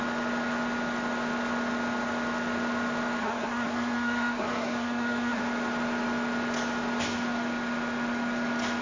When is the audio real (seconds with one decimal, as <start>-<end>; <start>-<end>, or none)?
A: 0.0-3.2; 5.4-8.8